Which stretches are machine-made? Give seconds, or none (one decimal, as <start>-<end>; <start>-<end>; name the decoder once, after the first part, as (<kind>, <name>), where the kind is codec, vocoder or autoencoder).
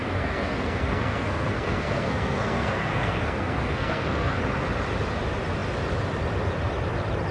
0.0-4.4 (codec, SNAC)